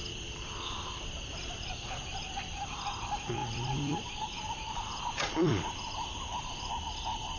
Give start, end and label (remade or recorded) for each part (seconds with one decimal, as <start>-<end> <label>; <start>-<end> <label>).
0.0-7.4 remade